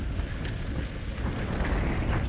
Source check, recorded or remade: recorded